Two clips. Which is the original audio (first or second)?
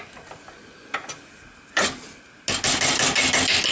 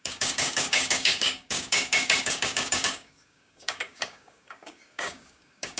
first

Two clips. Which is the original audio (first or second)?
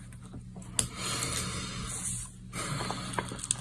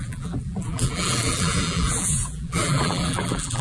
first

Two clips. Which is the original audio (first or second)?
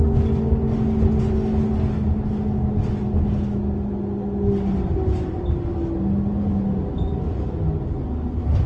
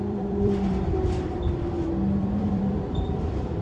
first